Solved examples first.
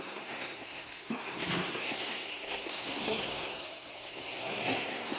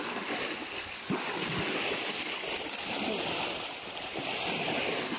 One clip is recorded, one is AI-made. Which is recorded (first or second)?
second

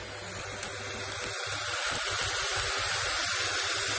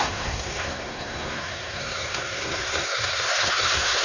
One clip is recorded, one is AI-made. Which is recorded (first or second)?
first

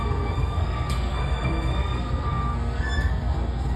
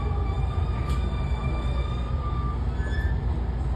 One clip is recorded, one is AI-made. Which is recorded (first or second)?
second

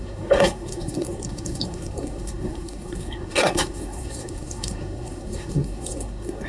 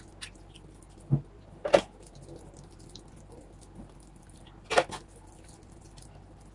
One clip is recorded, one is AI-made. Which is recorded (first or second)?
second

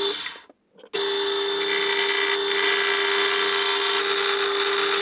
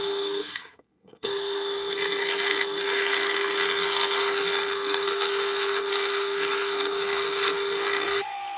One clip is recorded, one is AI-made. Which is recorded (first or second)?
first